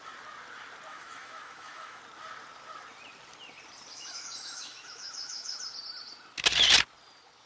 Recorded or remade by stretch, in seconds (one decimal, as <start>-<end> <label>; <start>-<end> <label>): 0.0-0.9 recorded; 0.9-2.0 remade; 2.0-3.9 recorded; 3.9-5.6 remade; 5.6-7.5 recorded